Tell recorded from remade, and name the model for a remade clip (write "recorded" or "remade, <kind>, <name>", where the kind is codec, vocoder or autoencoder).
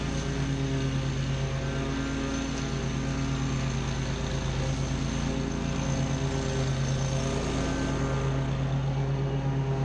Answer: recorded